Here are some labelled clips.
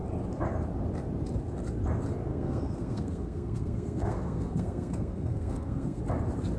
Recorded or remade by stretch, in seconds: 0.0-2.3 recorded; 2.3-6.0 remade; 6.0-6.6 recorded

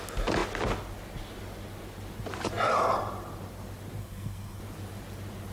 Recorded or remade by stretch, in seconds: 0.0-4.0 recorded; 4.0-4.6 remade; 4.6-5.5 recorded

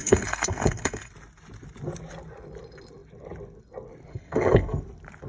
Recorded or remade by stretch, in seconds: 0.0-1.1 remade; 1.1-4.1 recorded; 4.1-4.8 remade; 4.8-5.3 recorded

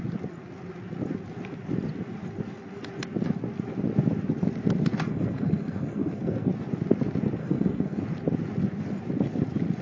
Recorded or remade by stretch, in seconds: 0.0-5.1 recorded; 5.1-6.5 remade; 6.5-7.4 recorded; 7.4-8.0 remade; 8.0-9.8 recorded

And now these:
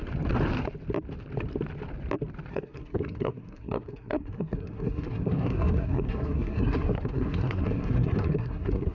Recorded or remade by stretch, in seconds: 0.0-2.5 recorded; 2.5-8.9 remade